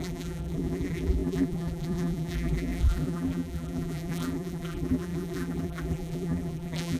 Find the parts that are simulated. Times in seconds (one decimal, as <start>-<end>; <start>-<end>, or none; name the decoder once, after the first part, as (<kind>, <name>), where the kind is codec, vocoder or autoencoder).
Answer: 0.0-7.0 (vocoder, BigVGAN v2)